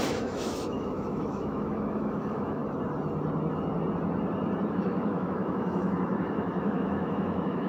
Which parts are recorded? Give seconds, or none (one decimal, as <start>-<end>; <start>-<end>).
2.6-4.7